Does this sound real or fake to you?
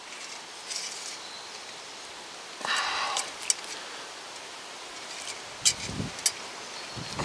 real